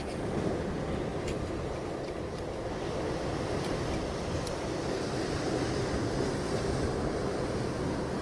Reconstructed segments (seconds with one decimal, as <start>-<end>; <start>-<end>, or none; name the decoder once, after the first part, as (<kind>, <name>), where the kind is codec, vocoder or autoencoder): none